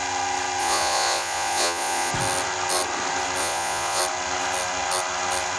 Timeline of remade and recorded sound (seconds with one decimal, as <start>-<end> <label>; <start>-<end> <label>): 0.0-0.6 recorded; 0.6-2.1 remade; 2.1-3.4 recorded; 3.4-4.0 remade; 4.0-5.6 recorded